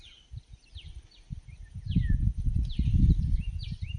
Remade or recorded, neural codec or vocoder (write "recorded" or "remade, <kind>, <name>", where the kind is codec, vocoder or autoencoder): recorded